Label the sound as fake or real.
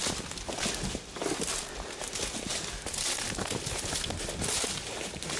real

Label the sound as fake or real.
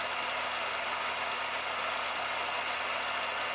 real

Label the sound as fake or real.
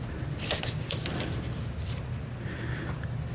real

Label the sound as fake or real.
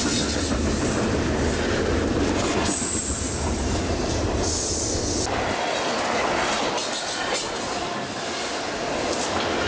real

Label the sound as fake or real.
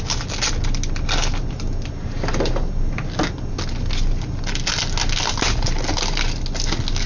real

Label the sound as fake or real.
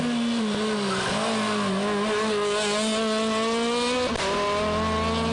real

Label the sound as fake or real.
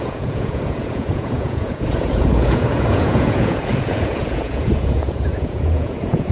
fake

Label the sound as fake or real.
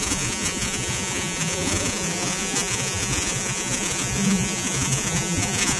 fake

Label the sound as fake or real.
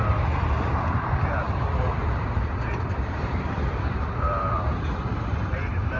fake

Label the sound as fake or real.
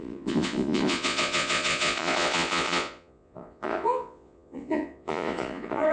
fake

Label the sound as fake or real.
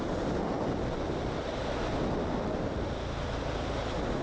real